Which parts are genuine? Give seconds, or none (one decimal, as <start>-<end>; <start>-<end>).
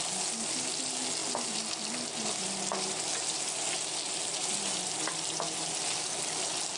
0.0-6.8